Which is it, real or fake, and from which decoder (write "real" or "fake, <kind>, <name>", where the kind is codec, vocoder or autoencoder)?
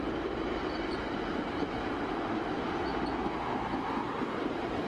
fake, vocoder, BigVGAN v2